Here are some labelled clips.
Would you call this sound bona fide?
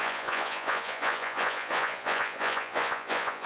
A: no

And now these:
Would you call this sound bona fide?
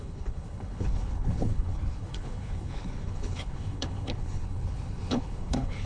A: no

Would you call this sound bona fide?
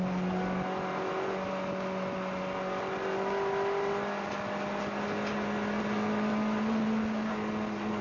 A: yes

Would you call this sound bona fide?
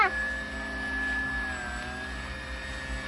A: yes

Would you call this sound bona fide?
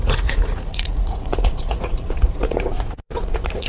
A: no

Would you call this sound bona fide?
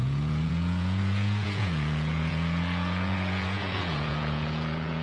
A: no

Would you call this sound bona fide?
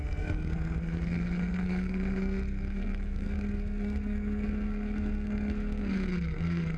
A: no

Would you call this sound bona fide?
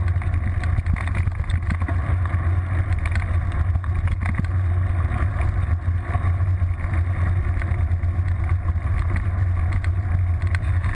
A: yes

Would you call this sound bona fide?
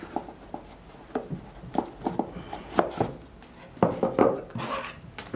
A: yes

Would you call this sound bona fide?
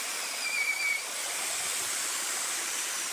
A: no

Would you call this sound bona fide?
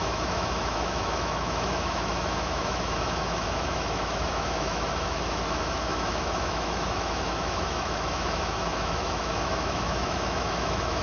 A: no